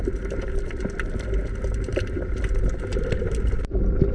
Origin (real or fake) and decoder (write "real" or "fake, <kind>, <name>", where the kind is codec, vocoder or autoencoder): real